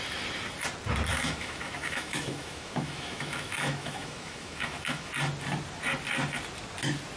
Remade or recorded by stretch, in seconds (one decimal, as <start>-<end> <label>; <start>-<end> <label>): 0.0-1.1 recorded; 1.1-5.1 remade; 5.1-7.2 recorded